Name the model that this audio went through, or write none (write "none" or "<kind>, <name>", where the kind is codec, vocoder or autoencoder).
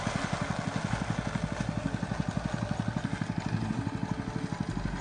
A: none